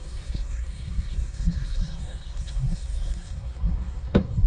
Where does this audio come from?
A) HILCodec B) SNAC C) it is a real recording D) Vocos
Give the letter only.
B